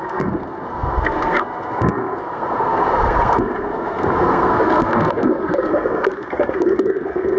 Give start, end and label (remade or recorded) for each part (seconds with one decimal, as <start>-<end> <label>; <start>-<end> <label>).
0.0-7.4 remade